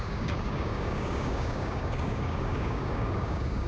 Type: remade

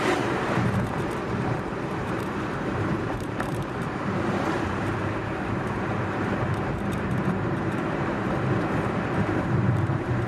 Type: remade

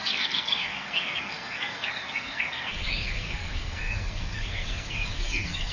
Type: remade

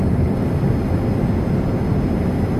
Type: recorded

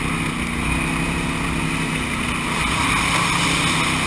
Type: recorded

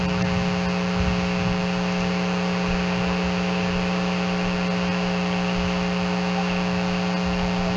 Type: recorded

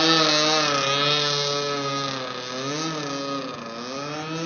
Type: recorded